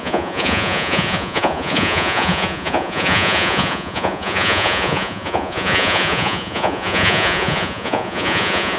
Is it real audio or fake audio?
fake